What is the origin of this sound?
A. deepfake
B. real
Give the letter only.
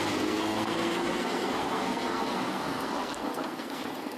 A